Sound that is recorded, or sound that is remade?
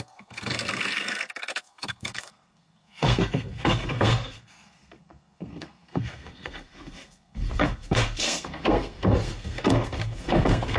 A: remade